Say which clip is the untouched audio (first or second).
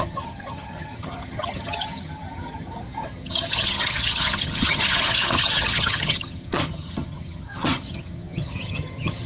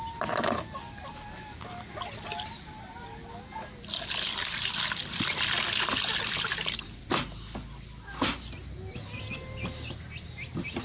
second